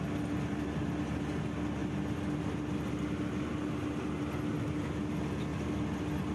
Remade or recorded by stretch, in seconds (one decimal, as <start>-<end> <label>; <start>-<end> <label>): 0.0-6.3 recorded